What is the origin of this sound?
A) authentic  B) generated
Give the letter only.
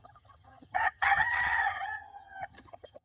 B